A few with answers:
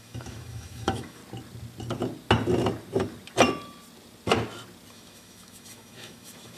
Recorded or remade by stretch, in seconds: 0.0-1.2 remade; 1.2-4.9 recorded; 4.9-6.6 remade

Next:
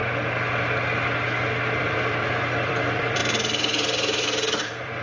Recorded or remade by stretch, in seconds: 0.0-1.8 recorded; 1.8-3.2 remade; 3.2-4.6 recorded; 4.6-5.0 remade

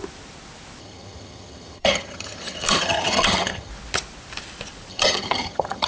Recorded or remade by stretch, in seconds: 0.0-0.8 recorded; 0.8-3.7 remade; 3.7-4.9 recorded; 4.9-5.9 remade

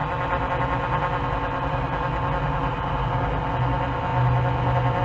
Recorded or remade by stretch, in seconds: 0.0-5.0 recorded